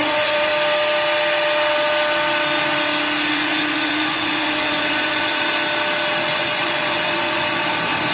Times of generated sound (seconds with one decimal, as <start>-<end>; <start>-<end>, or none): 0.0-0.5; 3.3-5.3; 6.2-8.1